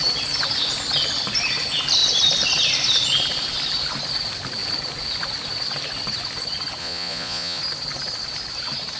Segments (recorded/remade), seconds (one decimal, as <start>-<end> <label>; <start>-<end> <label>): 0.0-6.8 recorded; 6.8-7.6 remade; 7.6-9.0 recorded